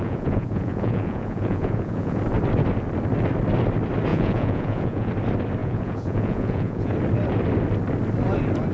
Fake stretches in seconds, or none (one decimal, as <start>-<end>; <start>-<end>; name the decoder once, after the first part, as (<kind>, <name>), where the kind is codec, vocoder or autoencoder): 0.0-2.2 (vocoder, Vocos); 4.1-5.1; 5.6-6.9